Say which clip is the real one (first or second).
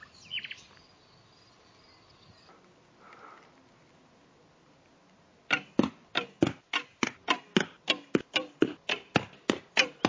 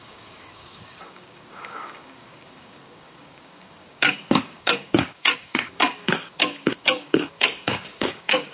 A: first